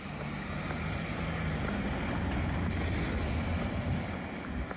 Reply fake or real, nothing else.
real